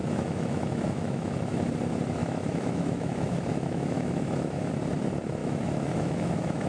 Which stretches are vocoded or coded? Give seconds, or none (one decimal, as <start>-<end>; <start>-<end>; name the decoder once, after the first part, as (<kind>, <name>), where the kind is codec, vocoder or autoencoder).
0.0-1.7 (autoencoder, DAC-VAE); 2.2-4.7; 5.4-6.7